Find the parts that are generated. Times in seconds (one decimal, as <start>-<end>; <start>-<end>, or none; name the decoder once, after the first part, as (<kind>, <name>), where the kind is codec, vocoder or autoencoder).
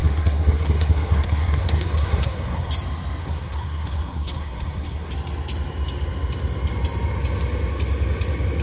0.0-2.7 (codec, SNAC); 3.2-5.1